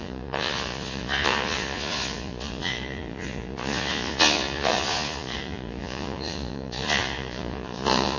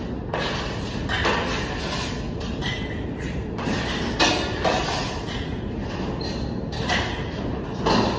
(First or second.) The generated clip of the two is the first